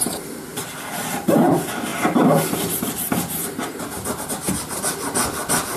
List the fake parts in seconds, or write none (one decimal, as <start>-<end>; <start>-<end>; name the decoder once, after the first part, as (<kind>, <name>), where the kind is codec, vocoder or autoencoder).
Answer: 0.5-1.5 (vocoder, BigVGAN v2); 1.9-4.9